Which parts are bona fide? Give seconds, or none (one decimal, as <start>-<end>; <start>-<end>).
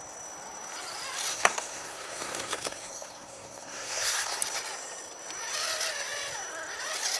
0.0-1.3; 4.4-7.2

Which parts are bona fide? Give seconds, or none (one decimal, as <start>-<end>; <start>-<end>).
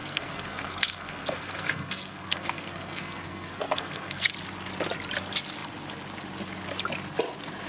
4.3-7.7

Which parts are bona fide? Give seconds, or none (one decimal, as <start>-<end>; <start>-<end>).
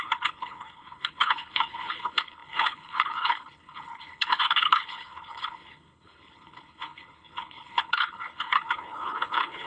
none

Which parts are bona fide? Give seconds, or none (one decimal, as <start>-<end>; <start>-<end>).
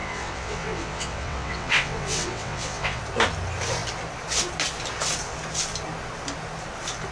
3.0-7.1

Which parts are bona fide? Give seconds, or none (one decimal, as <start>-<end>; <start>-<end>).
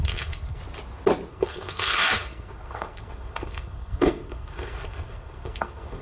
0.6-1.3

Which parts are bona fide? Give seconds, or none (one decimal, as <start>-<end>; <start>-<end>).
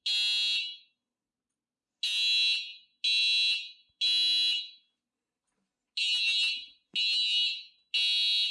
0.0-8.5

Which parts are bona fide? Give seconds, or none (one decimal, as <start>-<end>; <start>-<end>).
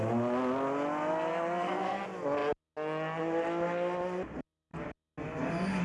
0.0-1.3; 2.0-5.8